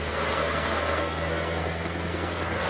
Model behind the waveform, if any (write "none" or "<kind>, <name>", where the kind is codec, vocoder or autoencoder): codec, SNAC